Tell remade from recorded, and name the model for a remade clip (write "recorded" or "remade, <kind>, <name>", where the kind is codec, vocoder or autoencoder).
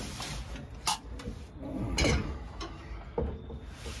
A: recorded